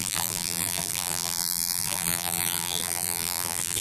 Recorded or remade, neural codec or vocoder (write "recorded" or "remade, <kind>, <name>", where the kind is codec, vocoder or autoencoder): remade, vocoder, BigVGAN v2